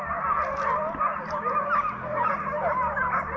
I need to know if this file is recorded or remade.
recorded